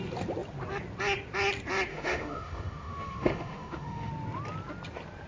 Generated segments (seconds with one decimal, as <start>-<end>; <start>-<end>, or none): 1.9-4.1